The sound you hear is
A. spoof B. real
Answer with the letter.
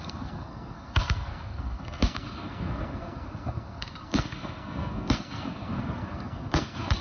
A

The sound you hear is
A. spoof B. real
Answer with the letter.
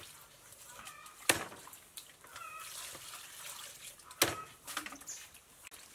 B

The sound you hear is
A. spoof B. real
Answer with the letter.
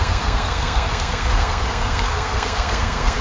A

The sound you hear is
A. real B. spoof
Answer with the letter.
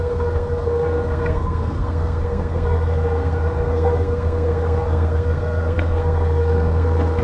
B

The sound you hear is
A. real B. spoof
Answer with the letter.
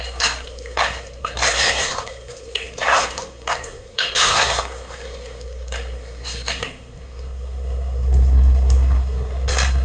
B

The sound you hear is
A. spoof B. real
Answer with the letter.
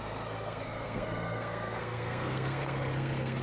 A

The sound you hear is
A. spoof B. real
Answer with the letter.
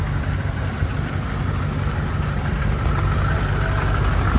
B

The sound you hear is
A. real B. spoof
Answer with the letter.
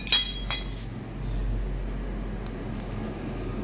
A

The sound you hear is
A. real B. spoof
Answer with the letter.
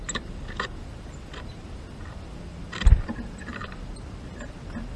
A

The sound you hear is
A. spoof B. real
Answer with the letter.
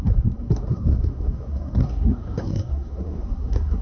A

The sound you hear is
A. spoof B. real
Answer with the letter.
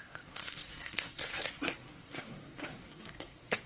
A